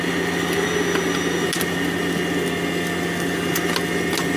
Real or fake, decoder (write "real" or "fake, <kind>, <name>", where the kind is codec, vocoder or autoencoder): real